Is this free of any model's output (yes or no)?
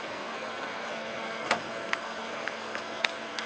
no